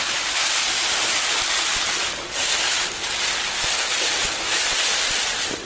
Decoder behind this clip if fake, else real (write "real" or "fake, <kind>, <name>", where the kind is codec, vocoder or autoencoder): real